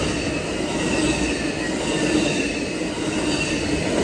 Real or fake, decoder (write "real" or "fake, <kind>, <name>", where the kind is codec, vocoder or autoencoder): real